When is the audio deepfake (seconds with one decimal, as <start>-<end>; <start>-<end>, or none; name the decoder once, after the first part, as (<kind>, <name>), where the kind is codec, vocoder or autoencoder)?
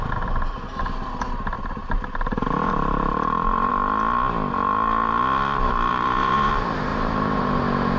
1.8-3.7 (vocoder, BigVGAN v2); 5.9-6.5; 6.9-7.6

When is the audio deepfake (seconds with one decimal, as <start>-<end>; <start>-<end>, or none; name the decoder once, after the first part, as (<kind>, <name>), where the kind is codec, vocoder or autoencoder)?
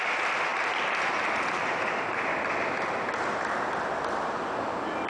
none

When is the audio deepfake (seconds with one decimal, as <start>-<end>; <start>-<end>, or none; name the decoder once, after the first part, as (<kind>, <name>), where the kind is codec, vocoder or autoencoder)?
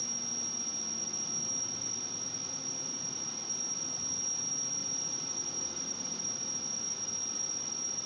4.8-6.2 (vocoder, BigVGAN v2)